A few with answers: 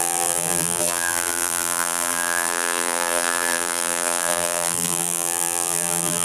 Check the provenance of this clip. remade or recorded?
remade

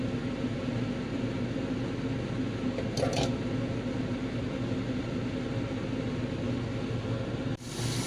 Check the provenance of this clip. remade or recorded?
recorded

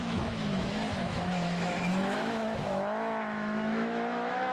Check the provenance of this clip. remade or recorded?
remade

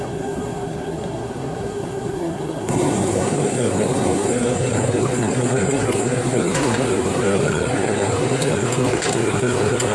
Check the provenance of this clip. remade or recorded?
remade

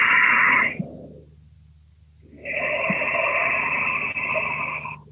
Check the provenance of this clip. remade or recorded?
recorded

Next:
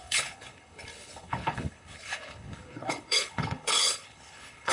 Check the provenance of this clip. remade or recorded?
remade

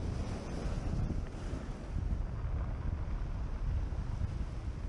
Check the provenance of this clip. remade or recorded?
recorded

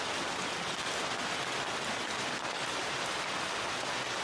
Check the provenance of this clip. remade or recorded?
recorded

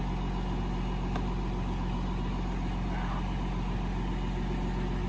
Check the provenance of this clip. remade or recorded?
recorded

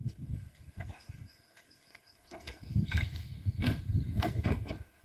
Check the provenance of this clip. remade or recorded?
remade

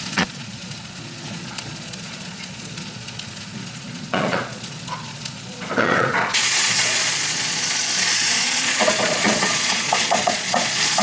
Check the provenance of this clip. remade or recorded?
remade